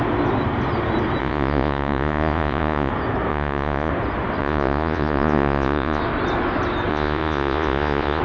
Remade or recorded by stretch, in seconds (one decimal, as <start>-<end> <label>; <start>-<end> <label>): 0.0-1.2 recorded; 1.2-2.9 remade; 2.9-3.3 recorded; 3.3-3.9 remade; 3.9-4.4 recorded; 4.4-6.0 remade; 6.0-6.9 recorded; 6.9-8.2 remade